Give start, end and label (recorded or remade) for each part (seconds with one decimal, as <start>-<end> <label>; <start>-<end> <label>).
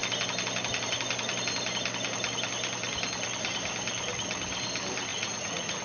0.0-5.1 recorded; 5.1-5.8 remade